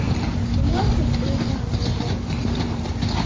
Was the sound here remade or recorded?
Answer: recorded